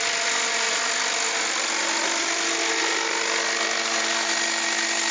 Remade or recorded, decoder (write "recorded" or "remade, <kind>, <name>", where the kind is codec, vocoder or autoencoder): recorded